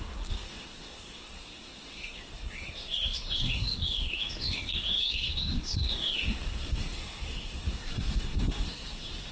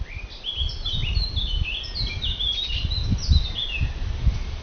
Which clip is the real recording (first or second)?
second